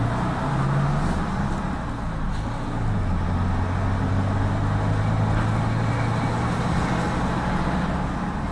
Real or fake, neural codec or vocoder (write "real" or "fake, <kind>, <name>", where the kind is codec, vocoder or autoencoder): real